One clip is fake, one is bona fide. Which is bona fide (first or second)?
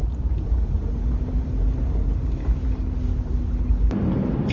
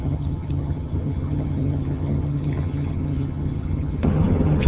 first